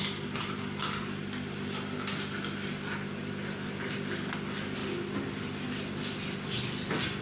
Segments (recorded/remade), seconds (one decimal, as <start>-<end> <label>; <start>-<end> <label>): 0.0-7.2 recorded